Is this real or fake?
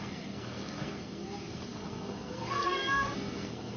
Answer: fake